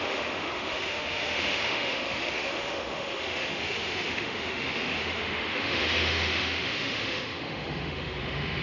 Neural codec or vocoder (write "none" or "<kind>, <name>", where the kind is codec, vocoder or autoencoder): autoencoder, DAC-VAE